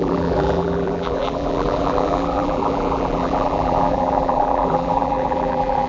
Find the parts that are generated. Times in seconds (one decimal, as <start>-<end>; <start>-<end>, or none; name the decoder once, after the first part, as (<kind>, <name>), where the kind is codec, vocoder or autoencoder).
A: 0.0-5.9 (vocoder, BigVGAN v2)